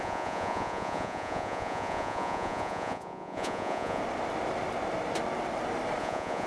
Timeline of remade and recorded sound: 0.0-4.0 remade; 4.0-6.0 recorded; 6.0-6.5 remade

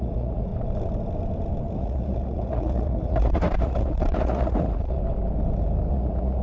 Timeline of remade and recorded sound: 0.0-0.5 remade; 0.5-1.8 recorded; 1.8-5.0 remade; 5.0-5.9 recorded; 5.9-6.4 remade